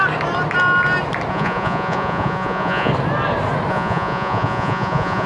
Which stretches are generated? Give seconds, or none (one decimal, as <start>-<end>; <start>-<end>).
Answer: 1.3-2.9; 3.7-5.3